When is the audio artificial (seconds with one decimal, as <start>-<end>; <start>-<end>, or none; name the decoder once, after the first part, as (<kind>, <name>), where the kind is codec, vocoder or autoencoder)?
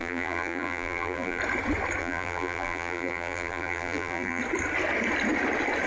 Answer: 0.0-1.4 (vocoder, BigVGAN v2); 2.0-4.4